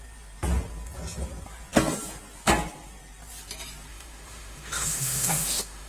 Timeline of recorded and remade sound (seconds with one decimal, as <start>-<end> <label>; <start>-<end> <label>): 0.0-3.9 recorded; 3.9-5.9 remade